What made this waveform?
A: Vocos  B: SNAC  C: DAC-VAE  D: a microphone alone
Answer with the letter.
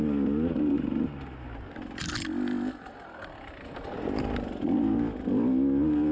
D